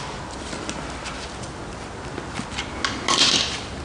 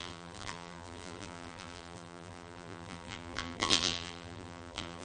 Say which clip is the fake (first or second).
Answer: second